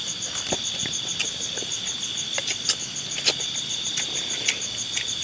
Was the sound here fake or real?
real